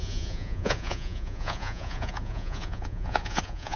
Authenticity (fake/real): fake